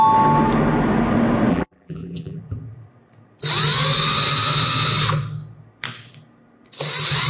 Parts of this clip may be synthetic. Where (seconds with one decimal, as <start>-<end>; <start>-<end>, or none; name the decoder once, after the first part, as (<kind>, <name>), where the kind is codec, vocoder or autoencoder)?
1.5-2.4 (vocoder, BigVGAN v2)